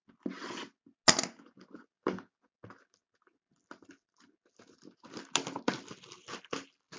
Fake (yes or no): no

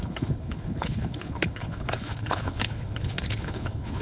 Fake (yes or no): yes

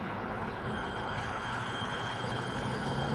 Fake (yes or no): yes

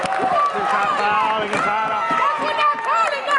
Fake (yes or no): no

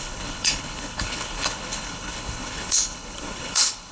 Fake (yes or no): yes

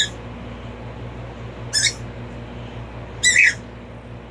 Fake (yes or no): no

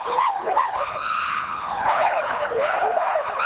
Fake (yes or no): yes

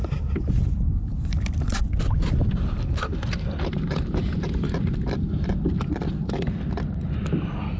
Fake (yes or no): no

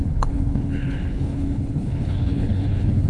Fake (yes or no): yes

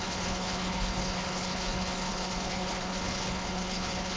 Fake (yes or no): yes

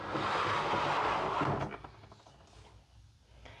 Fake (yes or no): no